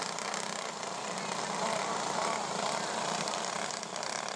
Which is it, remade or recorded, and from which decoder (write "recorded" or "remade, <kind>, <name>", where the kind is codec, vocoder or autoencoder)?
recorded